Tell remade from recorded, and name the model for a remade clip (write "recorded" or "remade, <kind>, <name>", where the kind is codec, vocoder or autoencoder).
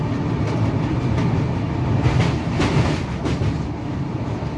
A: recorded